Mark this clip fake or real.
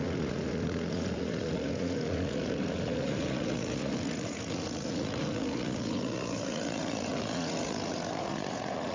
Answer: fake